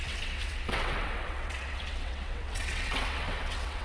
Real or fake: fake